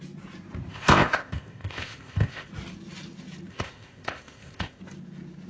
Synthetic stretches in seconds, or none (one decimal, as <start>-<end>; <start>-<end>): 0.7-2.5; 3.5-4.8